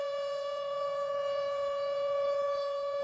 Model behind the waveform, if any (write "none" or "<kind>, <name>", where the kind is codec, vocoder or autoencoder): vocoder, Vocos